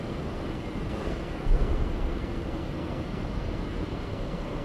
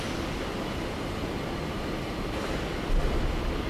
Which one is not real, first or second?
first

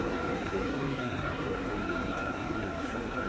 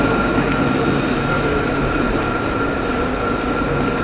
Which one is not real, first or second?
first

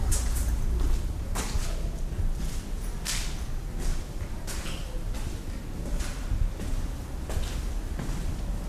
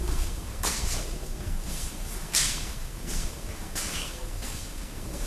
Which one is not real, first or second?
second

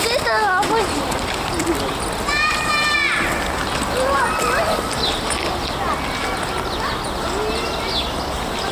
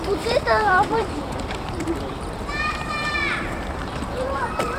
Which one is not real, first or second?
second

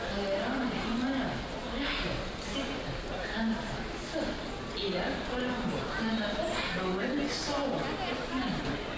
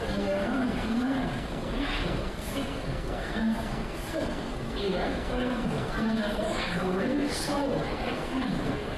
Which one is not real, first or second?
second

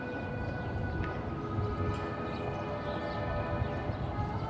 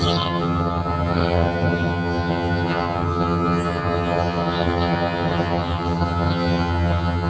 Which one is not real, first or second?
second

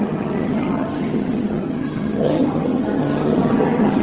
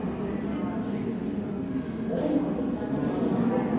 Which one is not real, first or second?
first